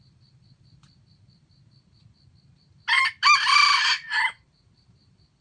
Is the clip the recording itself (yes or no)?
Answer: yes